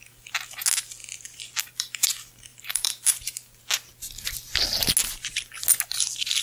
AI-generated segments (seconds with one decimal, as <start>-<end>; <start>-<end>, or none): 1.0-2.1; 2.5-3.6